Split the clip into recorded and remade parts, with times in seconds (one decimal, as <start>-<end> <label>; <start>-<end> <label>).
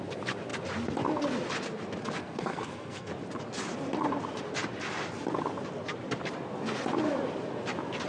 0.0-2.2 recorded; 2.2-3.1 remade; 3.1-8.1 recorded